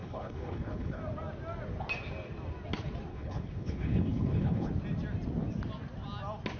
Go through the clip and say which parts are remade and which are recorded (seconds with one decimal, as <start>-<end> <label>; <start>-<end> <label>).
0.0-1.0 remade; 1.0-3.1 recorded; 3.1-4.7 remade; 4.7-6.6 recorded